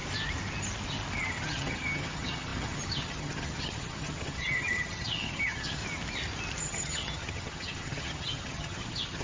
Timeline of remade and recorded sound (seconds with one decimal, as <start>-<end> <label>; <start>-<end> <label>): 0.0-1.2 recorded; 1.2-5.8 remade; 5.8-6.6 recorded; 6.6-9.2 remade